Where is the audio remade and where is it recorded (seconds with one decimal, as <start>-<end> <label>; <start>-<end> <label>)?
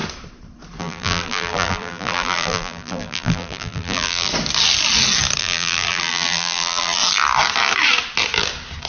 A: 0.0-0.8 recorded; 0.8-4.3 remade; 4.3-5.4 recorded; 5.4-7.0 remade; 7.0-8.9 recorded